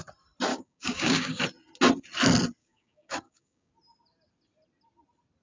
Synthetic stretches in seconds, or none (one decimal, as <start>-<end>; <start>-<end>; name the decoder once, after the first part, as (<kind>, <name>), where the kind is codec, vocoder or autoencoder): 0.5-1.4 (codec, DAC); 2.6-3.7

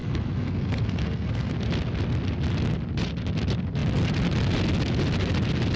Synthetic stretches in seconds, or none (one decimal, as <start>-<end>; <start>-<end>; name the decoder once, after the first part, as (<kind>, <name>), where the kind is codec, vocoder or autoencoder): 0.0-1.5 (codec, SNAC)

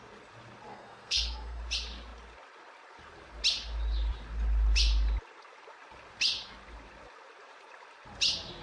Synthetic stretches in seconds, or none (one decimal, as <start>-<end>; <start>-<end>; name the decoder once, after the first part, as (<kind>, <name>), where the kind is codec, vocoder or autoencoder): 0.7-1.6 (codec, SNAC)